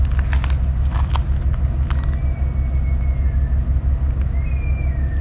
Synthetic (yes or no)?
no